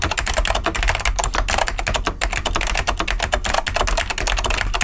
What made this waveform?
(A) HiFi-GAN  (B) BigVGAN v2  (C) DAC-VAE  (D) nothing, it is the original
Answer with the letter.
D